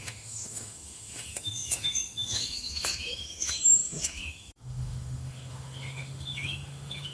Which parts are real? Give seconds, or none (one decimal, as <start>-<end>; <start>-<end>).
none